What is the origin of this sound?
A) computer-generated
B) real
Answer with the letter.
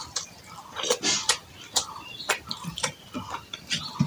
A